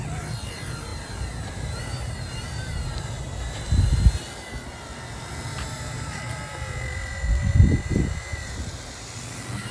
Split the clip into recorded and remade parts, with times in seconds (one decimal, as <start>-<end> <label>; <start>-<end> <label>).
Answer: 0.0-0.9 recorded; 0.9-3.4 remade; 3.4-5.5 recorded; 5.5-6.1 remade; 6.1-7.7 recorded; 7.7-8.7 remade; 8.7-9.7 recorded